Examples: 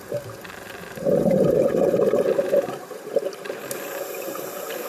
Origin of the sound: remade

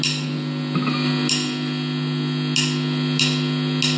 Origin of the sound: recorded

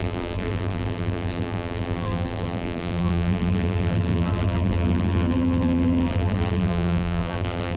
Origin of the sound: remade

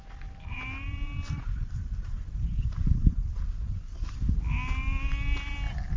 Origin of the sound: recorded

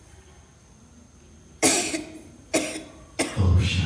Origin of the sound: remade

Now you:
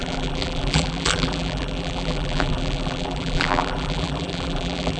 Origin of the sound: remade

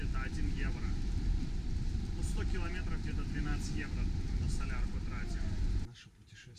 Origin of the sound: remade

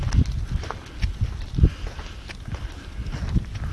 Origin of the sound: recorded